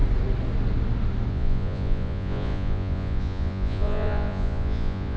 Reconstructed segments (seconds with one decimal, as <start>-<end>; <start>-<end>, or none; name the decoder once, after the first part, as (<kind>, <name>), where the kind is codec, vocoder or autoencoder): 1.3-5.2 (vocoder, Vocos)